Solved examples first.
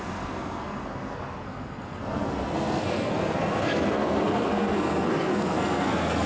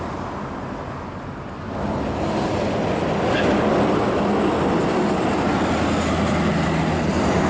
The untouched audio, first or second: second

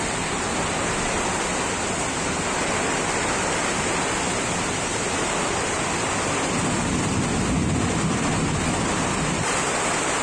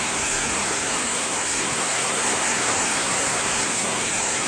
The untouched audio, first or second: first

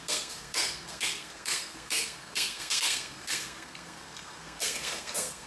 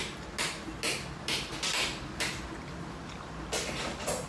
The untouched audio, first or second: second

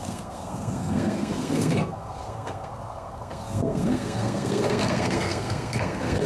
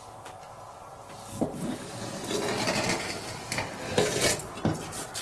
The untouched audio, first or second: second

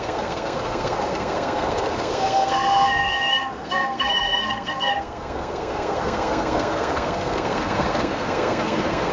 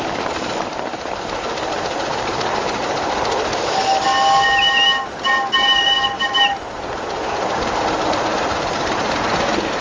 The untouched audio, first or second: second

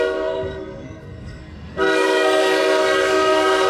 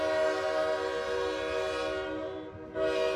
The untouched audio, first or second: second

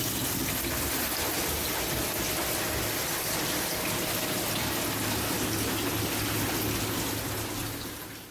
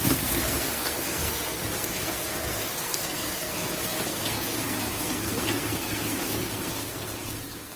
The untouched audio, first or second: first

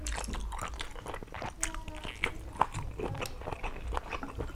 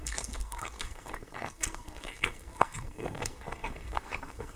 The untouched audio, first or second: first